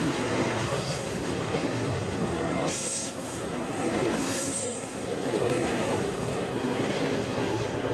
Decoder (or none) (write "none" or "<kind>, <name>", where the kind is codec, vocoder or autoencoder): codec, SNAC